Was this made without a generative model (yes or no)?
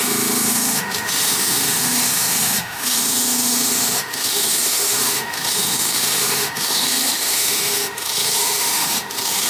no